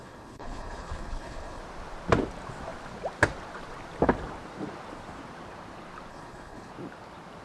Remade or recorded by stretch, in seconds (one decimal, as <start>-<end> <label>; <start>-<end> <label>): 0.0-1.6 remade; 1.6-6.1 recorded; 6.1-6.7 remade; 6.7-7.4 recorded